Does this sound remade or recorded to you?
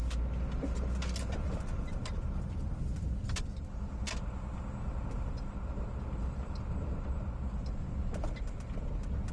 recorded